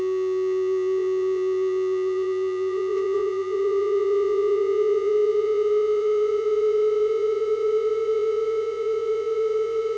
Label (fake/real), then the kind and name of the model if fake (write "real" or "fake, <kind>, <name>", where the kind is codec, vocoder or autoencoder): fake, vocoder, Vocos